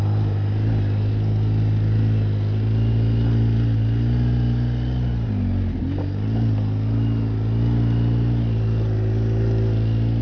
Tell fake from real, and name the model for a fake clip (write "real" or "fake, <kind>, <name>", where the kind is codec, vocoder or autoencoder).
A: real